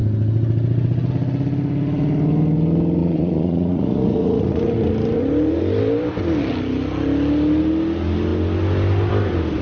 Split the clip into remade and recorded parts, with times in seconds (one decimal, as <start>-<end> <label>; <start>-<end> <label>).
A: 0.0-3.0 recorded; 3.0-4.6 remade; 4.6-9.6 recorded